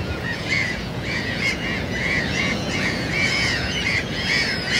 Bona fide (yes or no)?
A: no